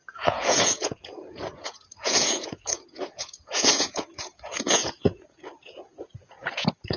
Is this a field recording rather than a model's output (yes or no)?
no